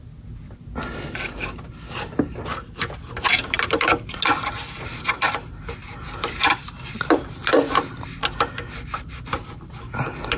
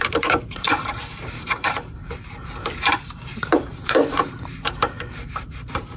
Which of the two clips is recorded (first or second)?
first